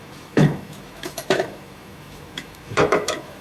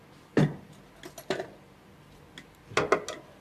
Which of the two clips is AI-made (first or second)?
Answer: first